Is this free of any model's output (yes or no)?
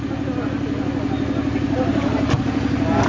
yes